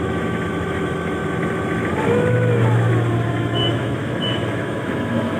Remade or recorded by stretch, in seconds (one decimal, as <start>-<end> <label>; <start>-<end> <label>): 0.0-1.2 remade; 1.2-3.3 recorded; 3.3-5.4 remade